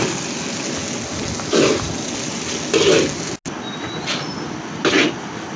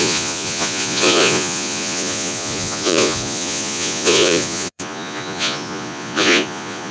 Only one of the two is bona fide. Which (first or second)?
first